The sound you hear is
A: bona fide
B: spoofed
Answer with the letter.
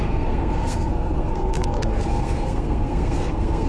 B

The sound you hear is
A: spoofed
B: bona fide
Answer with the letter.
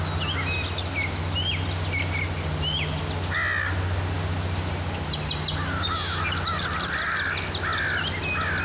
B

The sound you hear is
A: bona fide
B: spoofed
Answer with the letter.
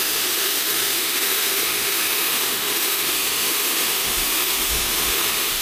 B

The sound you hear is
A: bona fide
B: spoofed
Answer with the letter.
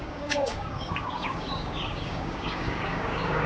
B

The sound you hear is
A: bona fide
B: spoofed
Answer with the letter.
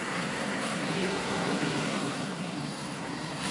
B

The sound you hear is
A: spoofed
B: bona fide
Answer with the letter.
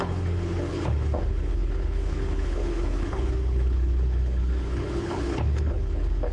A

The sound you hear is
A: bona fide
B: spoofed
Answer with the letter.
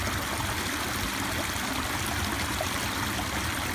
A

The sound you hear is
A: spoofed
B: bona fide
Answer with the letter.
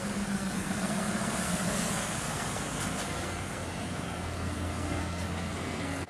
A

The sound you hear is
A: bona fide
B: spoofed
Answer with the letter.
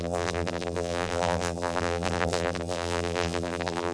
B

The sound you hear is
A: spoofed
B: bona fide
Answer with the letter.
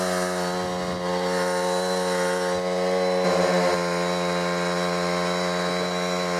B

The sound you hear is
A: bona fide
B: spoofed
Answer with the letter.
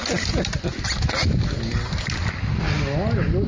A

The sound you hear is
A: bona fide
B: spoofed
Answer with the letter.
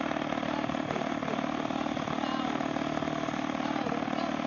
A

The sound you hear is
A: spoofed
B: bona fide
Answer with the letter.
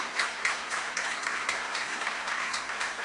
A